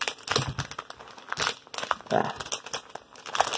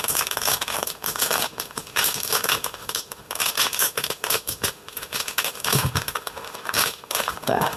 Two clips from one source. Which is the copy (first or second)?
second